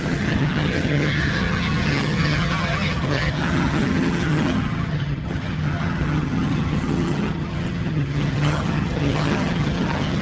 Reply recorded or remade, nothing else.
remade